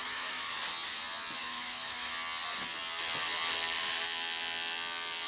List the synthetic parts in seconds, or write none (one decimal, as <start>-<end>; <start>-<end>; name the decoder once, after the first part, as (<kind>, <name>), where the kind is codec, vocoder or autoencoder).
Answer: 0.0-0.6 (autoencoder, DAC-VAE); 1.4-2.1